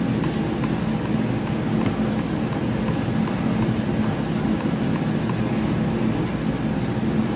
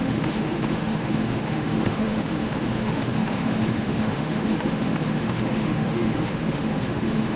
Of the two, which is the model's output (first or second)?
second